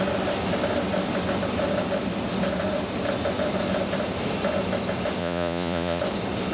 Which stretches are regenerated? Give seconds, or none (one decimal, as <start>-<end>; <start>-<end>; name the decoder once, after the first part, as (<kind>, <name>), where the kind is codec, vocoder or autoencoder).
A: 5.2-6.0 (vocoder, Vocos)